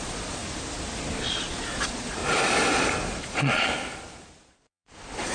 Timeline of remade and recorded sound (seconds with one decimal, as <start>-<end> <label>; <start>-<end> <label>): 0.0-0.4 remade; 0.4-1.2 recorded; 1.2-2.2 remade; 2.2-3.2 recorded; 3.2-3.7 remade; 3.7-4.5 recorded; 4.5-5.3 remade